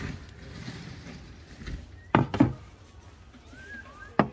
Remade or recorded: recorded